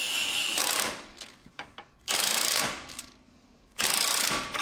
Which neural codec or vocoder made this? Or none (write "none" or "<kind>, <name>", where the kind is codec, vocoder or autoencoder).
codec, DAC